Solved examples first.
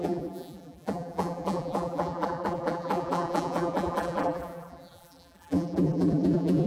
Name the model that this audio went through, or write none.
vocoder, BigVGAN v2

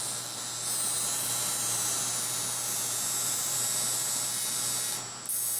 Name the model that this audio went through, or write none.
none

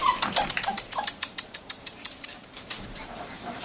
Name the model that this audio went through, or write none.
vocoder, BigVGAN v2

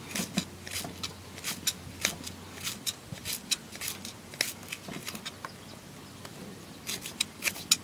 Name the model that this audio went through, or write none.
none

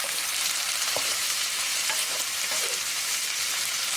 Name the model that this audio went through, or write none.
vocoder, BigVGAN v2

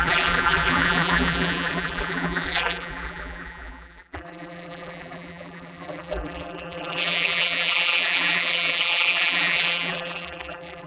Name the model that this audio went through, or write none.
vocoder, BigVGAN v2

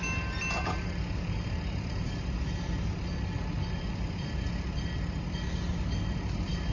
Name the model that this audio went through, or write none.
none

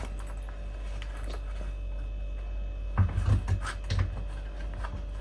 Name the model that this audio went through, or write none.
none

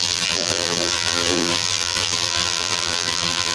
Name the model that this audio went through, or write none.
vocoder, BigVGAN v2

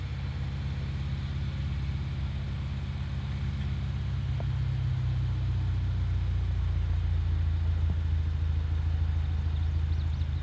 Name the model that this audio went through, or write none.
none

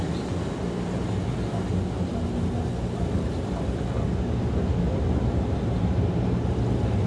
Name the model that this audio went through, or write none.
none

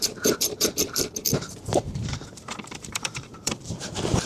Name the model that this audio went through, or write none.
vocoder, BigVGAN v2